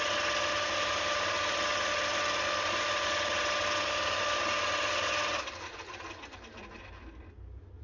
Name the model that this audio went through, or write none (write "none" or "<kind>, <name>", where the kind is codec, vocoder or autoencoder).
none